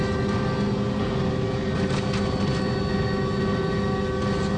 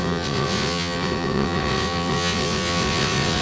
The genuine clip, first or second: first